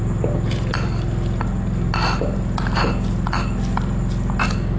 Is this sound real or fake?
real